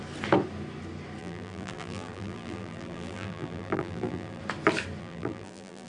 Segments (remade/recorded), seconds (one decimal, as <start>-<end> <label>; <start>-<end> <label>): 0.0-1.2 recorded; 1.2-4.4 remade; 4.4-5.0 recorded; 5.0-5.9 remade